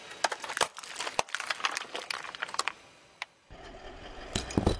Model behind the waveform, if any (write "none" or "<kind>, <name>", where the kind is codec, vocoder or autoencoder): none